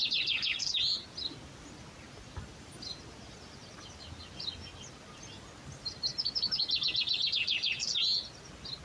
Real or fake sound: real